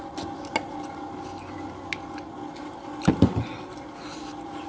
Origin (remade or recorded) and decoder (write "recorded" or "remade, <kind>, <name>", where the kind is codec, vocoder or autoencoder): recorded